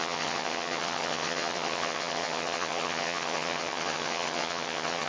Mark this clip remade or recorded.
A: remade